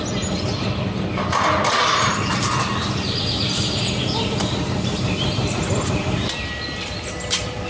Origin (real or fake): real